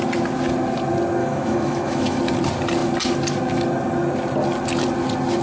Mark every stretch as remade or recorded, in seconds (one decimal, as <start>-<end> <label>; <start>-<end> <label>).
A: 0.0-1.2 recorded; 1.2-2.2 remade; 2.2-5.4 recorded